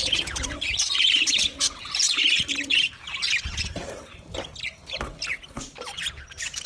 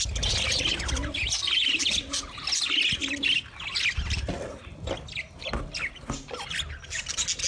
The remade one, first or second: first